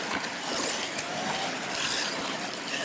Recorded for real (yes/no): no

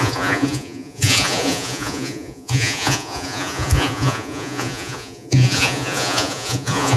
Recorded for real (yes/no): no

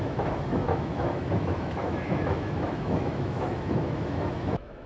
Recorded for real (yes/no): no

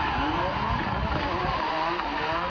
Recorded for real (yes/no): yes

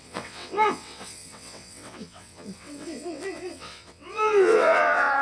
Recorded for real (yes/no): no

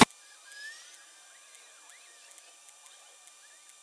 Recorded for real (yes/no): yes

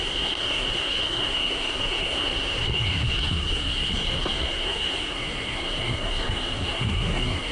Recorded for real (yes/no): no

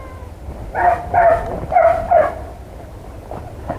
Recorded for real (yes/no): yes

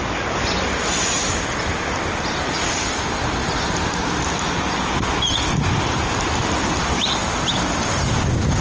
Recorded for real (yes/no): yes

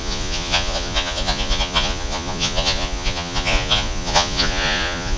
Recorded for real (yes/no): no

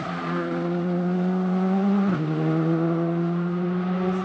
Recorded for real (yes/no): yes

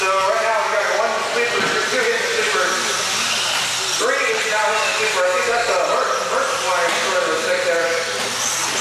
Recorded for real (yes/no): yes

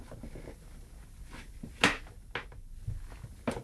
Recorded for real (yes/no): yes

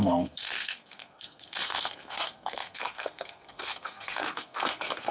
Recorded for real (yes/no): no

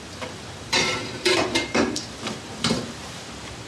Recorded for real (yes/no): no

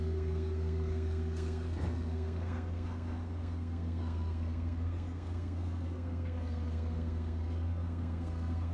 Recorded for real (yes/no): no